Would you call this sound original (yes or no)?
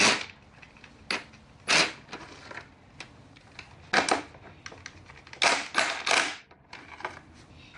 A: yes